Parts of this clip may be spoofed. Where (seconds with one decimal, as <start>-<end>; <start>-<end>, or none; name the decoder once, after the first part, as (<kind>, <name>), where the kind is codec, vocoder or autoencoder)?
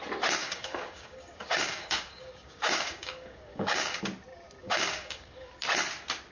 0.4-4.0 (codec, DAC); 4.6-5.5